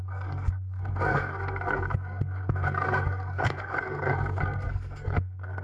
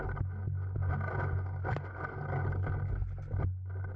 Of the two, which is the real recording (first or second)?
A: second